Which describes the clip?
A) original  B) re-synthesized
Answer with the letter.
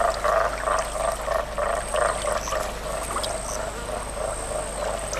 A